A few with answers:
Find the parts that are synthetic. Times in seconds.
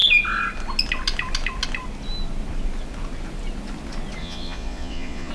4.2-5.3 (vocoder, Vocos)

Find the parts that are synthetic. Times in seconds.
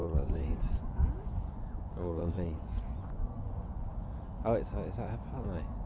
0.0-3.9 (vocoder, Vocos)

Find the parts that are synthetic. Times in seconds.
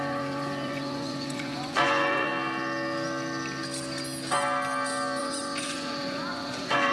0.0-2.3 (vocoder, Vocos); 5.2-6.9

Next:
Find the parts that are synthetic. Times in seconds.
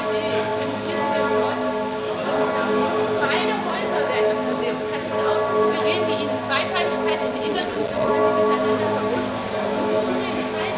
7.5-8.1 (vocoder, Vocos)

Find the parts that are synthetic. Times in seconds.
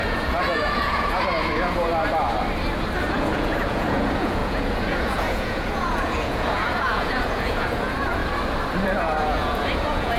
0.0-1.9 (vocoder, Vocos); 3.1-8.2; 9.0-10.2